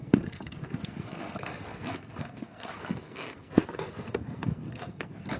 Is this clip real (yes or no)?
no